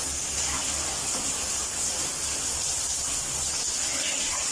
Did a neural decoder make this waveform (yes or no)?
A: no